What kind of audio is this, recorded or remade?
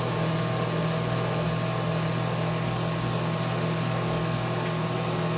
recorded